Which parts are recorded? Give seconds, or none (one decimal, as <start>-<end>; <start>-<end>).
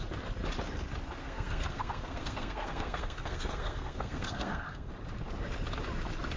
0.0-1.2; 4.9-6.4